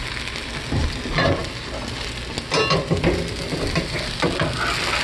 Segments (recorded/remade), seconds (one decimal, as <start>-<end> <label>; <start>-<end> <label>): 0.0-5.0 recorded